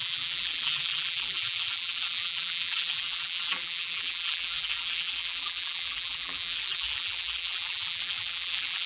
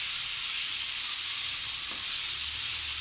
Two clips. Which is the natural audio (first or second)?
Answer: second